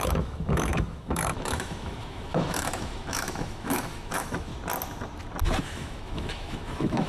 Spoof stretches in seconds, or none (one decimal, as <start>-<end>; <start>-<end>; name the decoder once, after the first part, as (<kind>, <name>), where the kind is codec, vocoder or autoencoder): 0.0-4.5 (autoencoder, DAC-VAE); 5.6-7.1